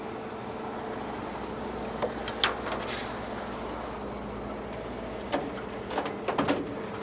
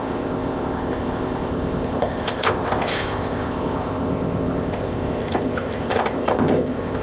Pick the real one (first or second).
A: first